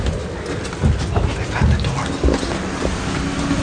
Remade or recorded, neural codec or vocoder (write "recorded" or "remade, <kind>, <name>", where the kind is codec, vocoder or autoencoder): recorded